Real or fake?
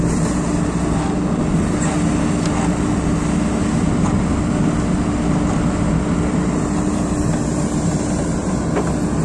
real